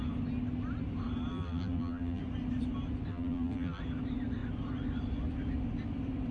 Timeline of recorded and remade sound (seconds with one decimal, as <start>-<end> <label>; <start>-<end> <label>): 0.0-1.3 recorded; 1.3-2.2 remade; 2.2-3.1 recorded; 3.1-3.8 remade; 3.8-6.3 recorded